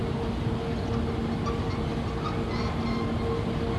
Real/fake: real